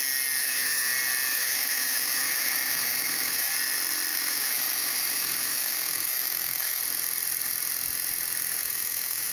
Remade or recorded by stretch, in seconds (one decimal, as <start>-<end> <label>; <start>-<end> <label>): 0.0-0.4 recorded; 0.4-0.9 remade; 0.9-1.3 recorded; 1.3-3.5 remade; 3.5-4.1 recorded; 4.1-6.8 remade; 6.8-8.6 recorded; 8.6-9.3 remade